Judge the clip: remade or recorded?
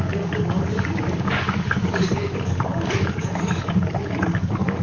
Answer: remade